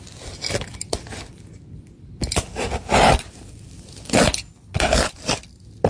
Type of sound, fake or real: real